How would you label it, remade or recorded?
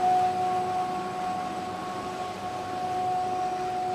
recorded